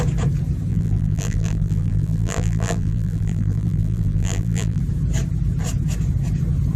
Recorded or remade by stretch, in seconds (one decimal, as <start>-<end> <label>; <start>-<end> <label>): 0.0-0.7 recorded; 0.7-4.8 remade; 4.8-6.8 recorded